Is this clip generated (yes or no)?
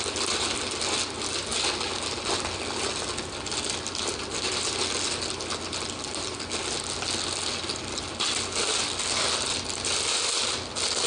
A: no